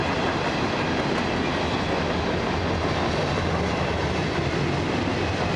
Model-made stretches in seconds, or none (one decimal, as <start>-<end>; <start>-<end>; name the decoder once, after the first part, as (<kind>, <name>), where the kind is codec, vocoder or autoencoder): none